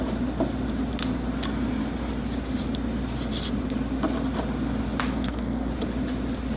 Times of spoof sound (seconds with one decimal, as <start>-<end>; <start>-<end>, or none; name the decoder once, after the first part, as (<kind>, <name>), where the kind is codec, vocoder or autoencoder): 5.1-5.7 (codec, SNAC)